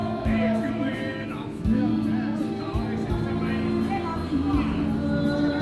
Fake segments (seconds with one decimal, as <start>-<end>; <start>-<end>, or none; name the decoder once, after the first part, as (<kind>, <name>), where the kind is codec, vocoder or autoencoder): 0.0-1.9 (autoencoder, DAC-VAE)